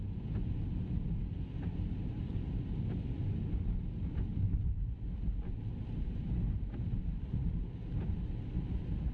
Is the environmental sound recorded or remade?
recorded